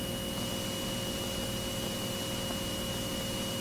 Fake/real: real